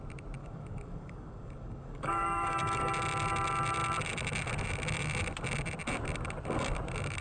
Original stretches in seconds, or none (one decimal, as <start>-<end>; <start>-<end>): 0.0-0.4; 2.9-7.2